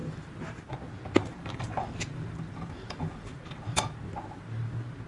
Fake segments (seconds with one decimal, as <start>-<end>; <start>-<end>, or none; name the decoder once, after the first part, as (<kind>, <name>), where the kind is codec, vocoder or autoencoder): 1.2-3.8 (vocoder, BigVGAN v2)